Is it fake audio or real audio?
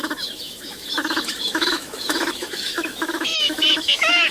fake